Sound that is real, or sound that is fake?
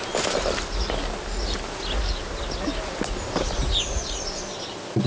real